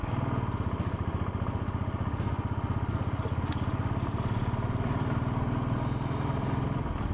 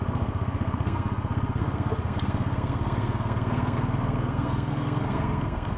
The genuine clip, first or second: first